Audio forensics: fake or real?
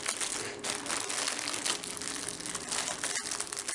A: real